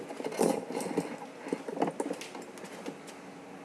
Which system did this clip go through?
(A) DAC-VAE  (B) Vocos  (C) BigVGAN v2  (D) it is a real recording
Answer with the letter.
D